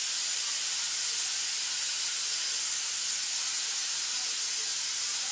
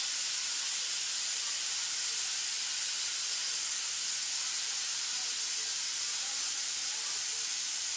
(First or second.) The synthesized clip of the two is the second